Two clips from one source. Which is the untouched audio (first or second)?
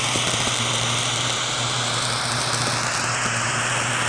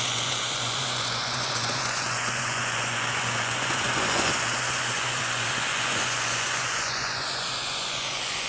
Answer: first